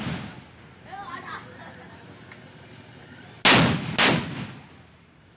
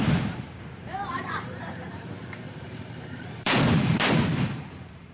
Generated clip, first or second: second